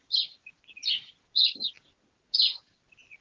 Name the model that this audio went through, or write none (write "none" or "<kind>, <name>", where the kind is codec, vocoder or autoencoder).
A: none